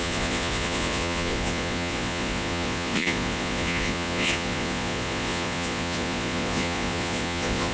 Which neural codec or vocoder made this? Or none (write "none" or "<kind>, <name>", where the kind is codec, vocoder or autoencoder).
vocoder, Vocos